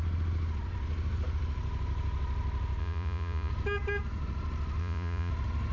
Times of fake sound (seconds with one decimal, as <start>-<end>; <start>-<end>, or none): 2.8-3.5; 4.8-5.3